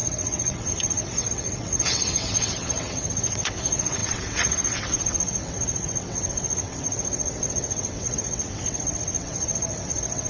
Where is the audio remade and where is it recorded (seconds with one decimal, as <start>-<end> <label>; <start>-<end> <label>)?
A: 0.0-10.3 remade